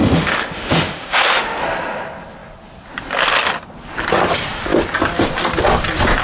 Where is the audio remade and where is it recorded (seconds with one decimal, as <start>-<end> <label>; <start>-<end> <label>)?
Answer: 0.0-1.6 remade; 1.6-6.2 recorded